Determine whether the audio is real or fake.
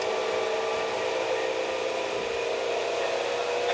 real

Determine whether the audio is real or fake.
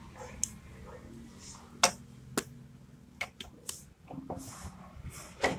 real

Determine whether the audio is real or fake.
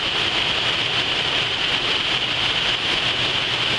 real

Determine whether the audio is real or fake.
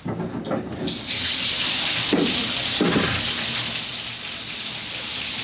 real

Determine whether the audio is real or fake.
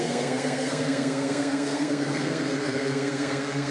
fake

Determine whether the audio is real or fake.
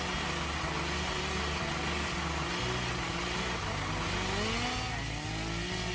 real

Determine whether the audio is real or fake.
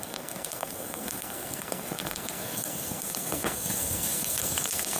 fake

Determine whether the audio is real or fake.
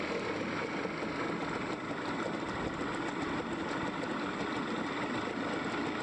real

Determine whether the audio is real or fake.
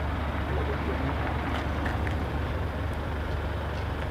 real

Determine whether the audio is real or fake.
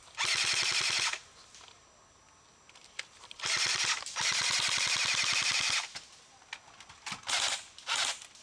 real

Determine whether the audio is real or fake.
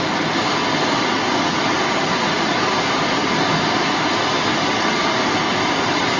real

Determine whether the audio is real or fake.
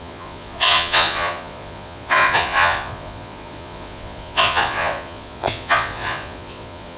fake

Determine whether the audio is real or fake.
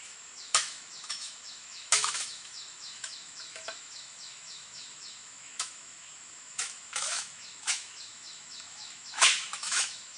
fake